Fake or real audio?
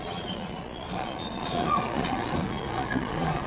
fake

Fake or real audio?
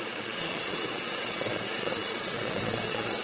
fake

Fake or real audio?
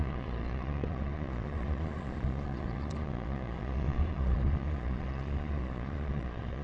fake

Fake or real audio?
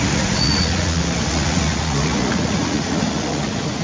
fake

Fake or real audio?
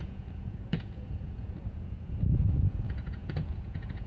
fake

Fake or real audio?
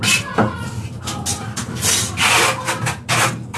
real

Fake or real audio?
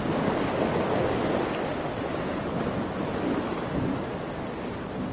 real